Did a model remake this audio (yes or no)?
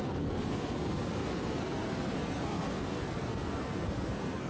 yes